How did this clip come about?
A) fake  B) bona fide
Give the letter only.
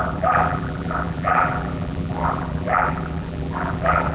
A